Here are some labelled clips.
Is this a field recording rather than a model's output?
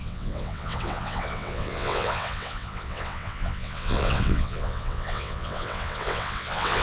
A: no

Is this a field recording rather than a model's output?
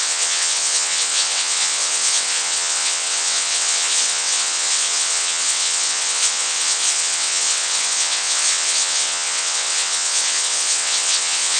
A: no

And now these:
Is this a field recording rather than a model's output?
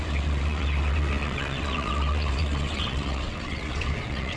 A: no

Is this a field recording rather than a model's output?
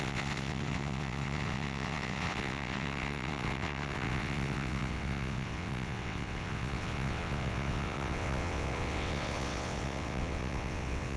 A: no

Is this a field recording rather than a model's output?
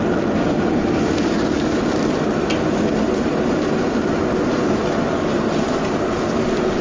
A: yes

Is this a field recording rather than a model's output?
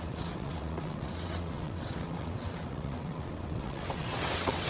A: no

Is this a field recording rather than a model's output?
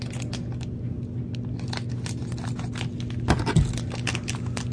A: yes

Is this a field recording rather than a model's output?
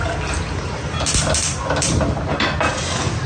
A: yes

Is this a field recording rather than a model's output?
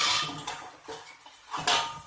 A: yes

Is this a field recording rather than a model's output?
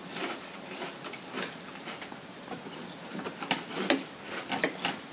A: yes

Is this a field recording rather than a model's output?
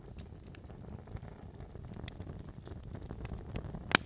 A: yes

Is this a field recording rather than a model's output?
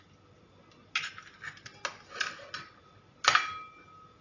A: yes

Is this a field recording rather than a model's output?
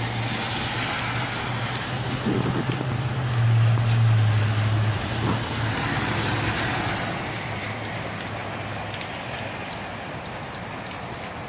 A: yes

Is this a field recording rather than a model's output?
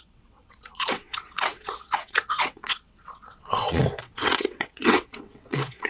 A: no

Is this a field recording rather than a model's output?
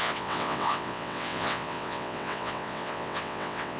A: no